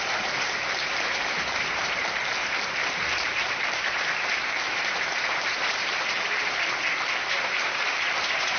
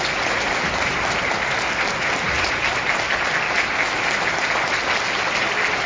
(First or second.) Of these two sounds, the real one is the second